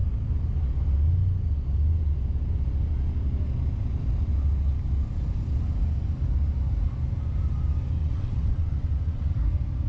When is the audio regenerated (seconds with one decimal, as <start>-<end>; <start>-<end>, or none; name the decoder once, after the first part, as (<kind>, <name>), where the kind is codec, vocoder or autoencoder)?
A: 8.0-9.3 (vocoder, WaveNeXt)